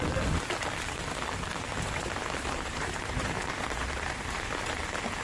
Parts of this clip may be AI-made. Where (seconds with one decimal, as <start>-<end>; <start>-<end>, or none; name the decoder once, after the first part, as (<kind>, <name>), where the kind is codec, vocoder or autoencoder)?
1.7-4.8 (vocoder, BigVGAN v2)